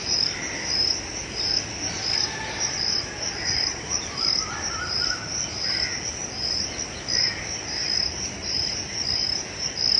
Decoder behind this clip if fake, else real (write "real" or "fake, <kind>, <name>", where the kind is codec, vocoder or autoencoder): fake, vocoder, BigVGAN v2